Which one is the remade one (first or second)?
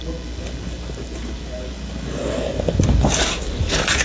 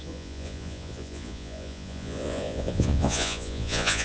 second